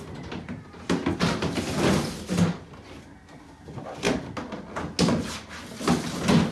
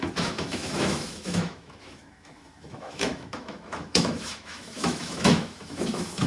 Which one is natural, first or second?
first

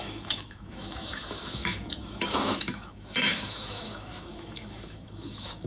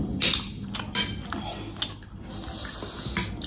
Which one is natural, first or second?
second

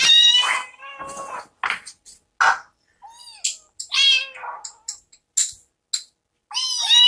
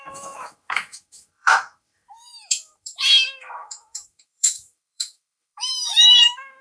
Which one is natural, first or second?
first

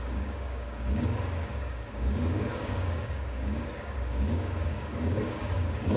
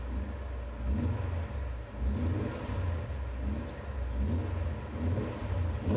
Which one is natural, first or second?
second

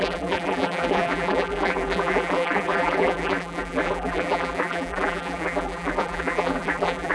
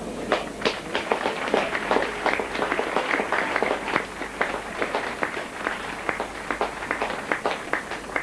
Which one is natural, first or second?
second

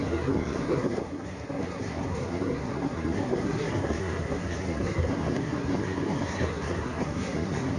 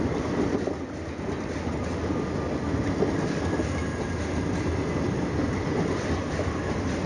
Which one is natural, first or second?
second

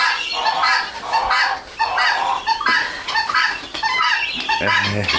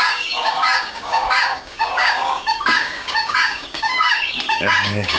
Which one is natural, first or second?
first